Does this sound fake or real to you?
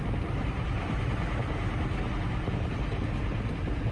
real